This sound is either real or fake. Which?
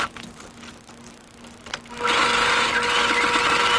real